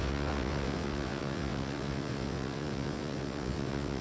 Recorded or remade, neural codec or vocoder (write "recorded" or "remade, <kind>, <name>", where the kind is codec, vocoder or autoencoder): remade, vocoder, WaveNeXt